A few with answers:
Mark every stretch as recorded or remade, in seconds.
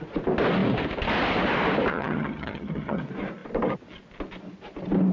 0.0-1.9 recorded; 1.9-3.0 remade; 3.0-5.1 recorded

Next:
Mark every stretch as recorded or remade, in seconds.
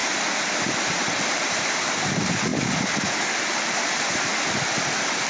0.0-5.3 recorded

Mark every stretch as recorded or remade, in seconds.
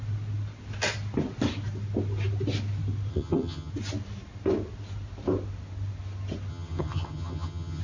0.0-3.1 recorded; 3.1-3.7 remade; 3.7-6.5 recorded; 6.5-7.8 remade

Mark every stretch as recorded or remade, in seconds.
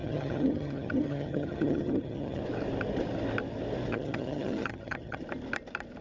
0.0-2.4 remade; 2.4-3.9 recorded; 3.9-5.2 remade; 5.2-6.0 recorded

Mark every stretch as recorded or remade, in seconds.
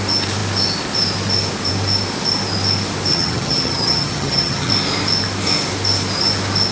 0.0-3.1 recorded; 3.1-4.7 remade; 4.7-6.7 recorded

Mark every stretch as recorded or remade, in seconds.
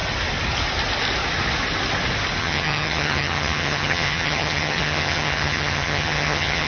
0.0-2.4 recorded; 2.4-6.7 remade